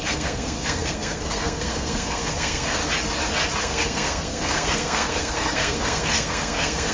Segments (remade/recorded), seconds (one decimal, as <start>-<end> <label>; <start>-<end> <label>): 0.0-2.8 remade; 2.8-3.6 recorded; 3.6-6.9 remade